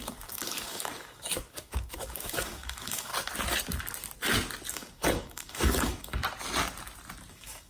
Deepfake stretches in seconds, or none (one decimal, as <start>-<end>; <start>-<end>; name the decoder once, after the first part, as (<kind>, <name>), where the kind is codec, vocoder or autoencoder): 0.0-3.1 (codec, DAC); 4.7-6.2; 7.3-7.7